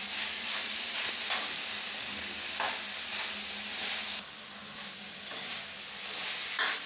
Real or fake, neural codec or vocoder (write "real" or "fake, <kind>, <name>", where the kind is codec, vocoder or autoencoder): real